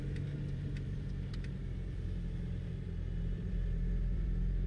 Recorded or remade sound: remade